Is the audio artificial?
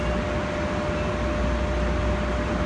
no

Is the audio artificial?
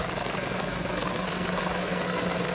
yes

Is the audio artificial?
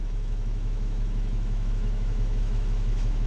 yes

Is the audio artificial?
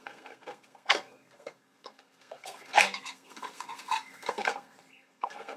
yes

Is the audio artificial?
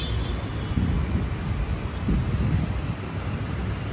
no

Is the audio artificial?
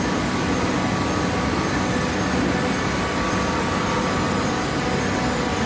no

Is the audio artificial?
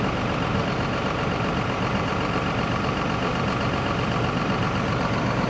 no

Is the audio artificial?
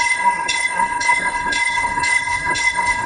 yes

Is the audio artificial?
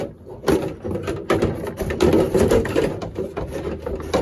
no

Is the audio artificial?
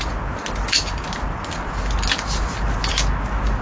no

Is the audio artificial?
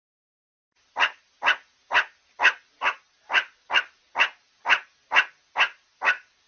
no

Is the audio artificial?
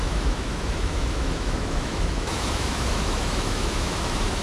yes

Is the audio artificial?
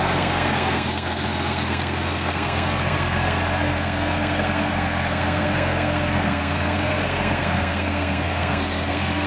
yes